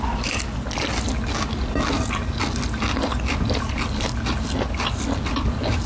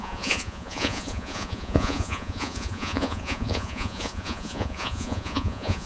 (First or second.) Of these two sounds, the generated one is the second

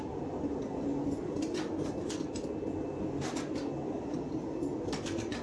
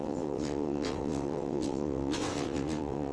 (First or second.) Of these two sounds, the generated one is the second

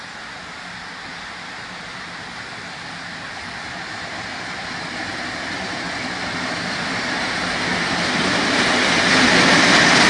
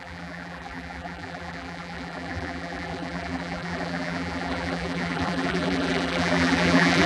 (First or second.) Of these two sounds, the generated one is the second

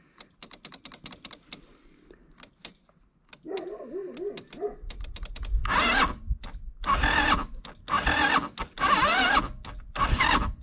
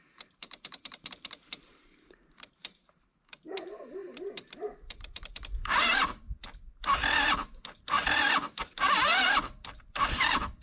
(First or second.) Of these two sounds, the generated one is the second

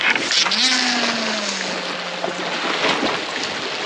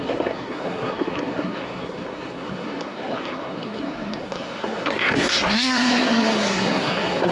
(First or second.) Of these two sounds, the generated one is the second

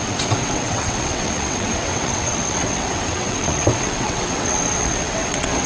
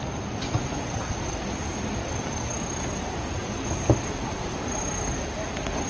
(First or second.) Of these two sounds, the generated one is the first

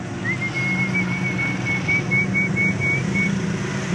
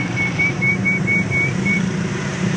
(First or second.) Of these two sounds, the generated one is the second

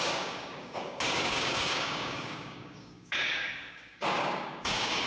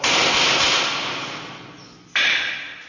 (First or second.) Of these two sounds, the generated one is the first